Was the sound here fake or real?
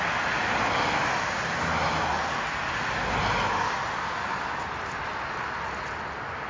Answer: real